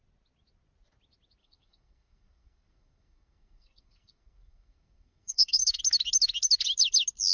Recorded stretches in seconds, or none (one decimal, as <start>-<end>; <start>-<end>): 0.0-1.4; 5.8-7.3